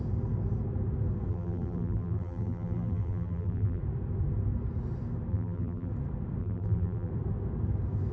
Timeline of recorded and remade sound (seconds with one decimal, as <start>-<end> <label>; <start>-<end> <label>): 0.0-1.3 recorded; 1.3-3.8 remade; 3.8-5.3 recorded; 5.3-5.9 remade; 5.9-6.4 recorded; 6.4-7.1 remade; 7.1-8.1 recorded